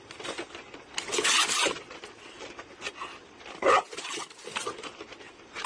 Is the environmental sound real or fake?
real